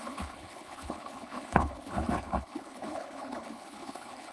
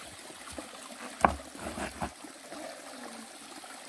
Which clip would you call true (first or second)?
second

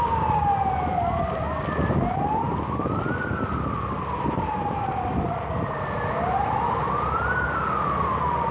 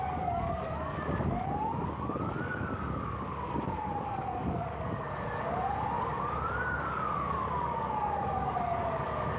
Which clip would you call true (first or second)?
first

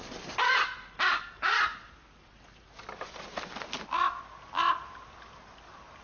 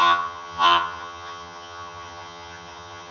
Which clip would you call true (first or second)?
first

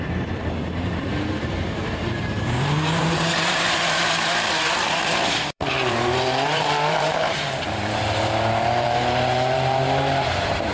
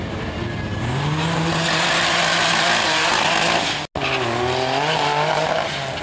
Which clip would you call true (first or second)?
second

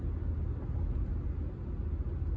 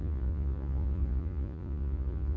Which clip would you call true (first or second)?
first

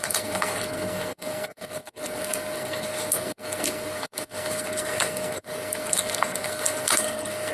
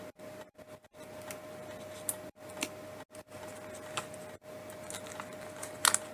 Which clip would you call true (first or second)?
second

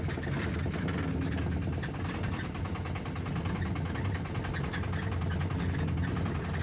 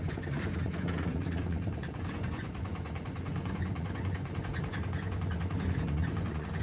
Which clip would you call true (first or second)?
first